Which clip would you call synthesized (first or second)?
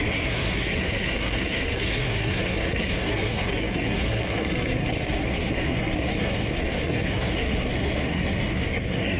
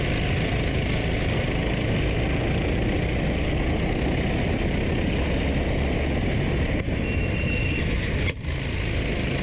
first